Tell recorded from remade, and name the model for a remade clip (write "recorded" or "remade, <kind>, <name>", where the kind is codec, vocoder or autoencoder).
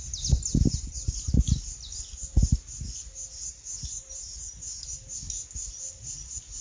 recorded